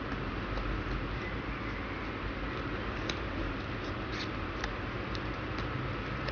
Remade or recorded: recorded